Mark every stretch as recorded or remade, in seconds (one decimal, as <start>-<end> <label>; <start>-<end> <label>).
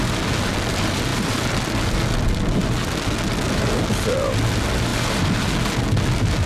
0.0-6.5 recorded